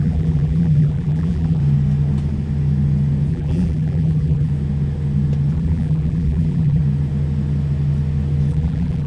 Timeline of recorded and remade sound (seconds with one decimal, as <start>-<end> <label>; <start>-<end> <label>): 0.0-1.6 remade; 1.6-3.3 recorded; 3.3-4.5 remade; 4.5-5.5 recorded; 5.5-6.8 remade; 6.8-8.5 recorded; 8.5-9.1 remade

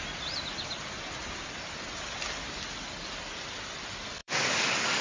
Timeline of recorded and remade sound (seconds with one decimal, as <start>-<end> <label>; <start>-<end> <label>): 0.0-1.2 recorded; 1.2-3.8 remade; 3.8-4.2 recorded; 4.2-5.0 remade

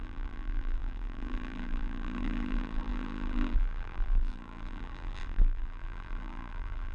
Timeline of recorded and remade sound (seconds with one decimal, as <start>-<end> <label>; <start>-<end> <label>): 0.0-6.9 remade

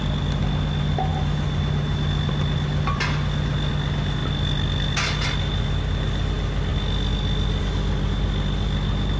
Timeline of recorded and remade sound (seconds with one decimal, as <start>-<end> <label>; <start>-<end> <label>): 0.0-9.2 recorded

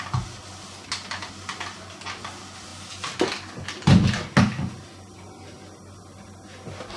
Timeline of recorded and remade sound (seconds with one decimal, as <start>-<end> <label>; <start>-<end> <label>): 0.0-7.0 recorded

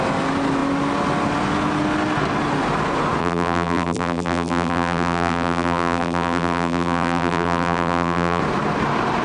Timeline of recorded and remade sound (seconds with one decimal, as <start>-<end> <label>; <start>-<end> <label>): 0.0-3.2 recorded; 3.2-8.4 remade; 8.4-9.2 recorded